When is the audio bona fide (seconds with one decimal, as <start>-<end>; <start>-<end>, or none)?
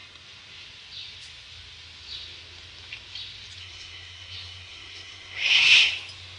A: 0.0-3.6; 5.9-6.4